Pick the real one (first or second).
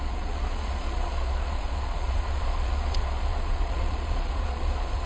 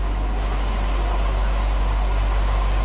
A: second